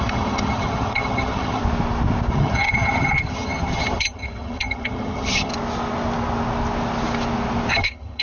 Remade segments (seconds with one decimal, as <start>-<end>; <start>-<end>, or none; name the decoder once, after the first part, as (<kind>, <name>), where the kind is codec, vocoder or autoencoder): 0.0-1.6 (vocoder, HiFi-GAN); 2.3-5.5; 7.7-8.2